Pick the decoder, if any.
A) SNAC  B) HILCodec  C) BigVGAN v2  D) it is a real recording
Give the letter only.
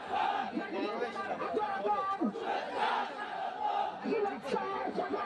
D